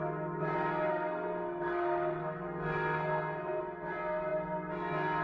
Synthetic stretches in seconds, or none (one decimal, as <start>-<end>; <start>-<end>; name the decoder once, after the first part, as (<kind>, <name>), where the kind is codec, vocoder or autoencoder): 0.9-3.6 (codec, SNAC)